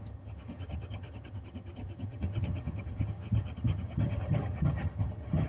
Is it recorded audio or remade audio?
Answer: remade